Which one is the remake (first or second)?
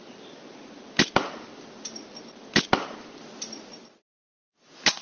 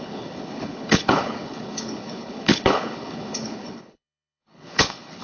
second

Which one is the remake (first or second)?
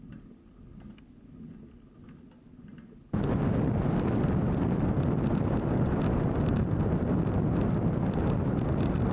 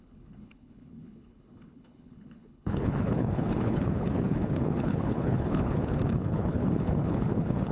second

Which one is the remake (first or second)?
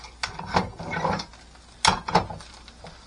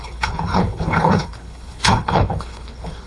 second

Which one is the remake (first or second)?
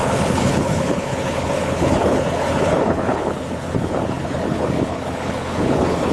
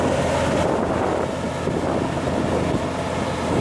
first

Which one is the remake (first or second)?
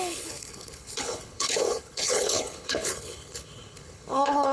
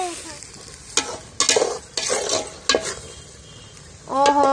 first